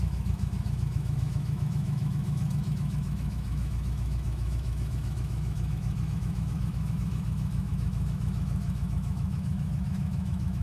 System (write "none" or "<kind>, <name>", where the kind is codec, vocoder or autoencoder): autoencoder, DAC-VAE